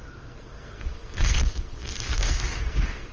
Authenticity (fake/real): fake